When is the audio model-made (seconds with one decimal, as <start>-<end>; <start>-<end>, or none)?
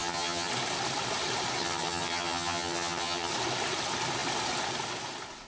0.0-0.5; 1.6-3.3